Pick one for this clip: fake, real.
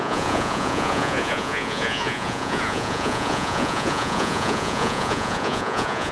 fake